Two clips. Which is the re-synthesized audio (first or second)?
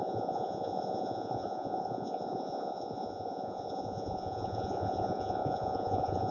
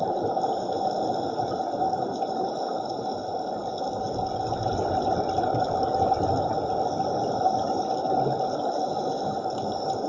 first